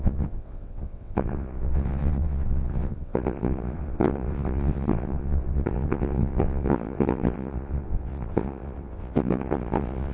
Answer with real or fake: fake